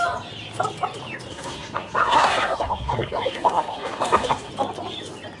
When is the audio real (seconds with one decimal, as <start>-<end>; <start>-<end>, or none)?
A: 0.0-1.3; 4.5-5.4